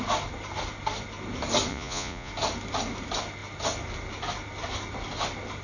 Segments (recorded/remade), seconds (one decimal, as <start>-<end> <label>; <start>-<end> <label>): 0.0-1.7 recorded; 1.7-2.3 remade; 2.3-5.6 recorded